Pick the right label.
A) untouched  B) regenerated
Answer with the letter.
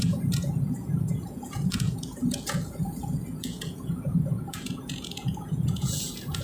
B